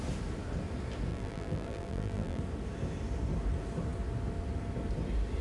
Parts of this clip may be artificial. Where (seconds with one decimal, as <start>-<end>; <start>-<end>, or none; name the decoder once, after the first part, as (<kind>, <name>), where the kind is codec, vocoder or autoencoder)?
1.1-2.4 (vocoder, BigVGAN v2)